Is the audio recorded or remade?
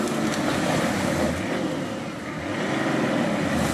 recorded